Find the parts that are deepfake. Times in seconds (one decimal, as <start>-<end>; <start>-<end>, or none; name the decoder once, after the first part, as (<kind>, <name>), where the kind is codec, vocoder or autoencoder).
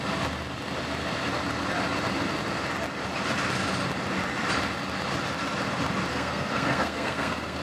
6.1-7.6 (codec, SNAC)